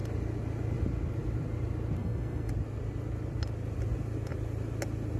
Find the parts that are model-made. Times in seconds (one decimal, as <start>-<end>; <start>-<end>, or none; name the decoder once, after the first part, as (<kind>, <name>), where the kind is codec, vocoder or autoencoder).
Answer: 2.0-2.5 (codec, SNAC)